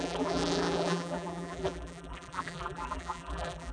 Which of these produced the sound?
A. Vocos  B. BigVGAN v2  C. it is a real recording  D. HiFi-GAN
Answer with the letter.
B